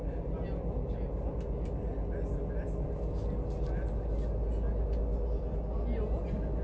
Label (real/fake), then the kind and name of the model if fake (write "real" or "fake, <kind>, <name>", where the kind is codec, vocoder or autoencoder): real